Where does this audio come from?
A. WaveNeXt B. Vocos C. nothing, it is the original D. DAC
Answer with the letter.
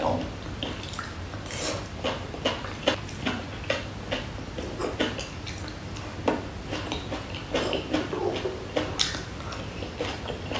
C